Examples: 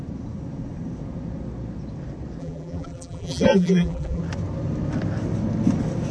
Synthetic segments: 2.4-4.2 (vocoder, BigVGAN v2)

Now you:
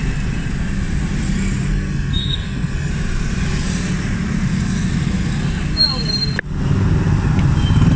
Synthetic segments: 1.7-2.9 (codec, SNAC)